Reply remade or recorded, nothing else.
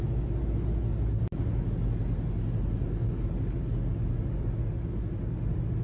recorded